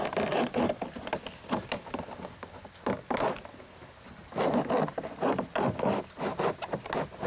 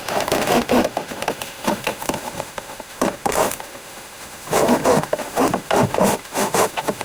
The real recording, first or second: first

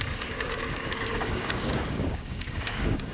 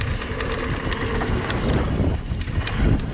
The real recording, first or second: second